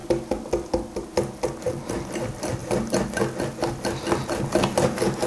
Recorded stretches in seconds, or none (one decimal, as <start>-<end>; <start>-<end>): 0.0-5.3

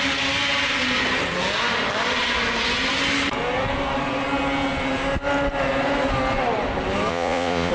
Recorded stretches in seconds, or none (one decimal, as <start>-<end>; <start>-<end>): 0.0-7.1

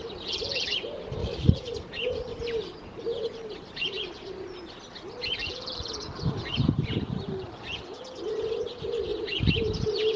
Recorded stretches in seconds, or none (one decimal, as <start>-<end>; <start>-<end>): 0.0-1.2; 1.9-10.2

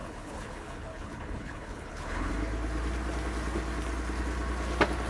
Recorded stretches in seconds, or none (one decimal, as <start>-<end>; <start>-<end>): 2.3-5.1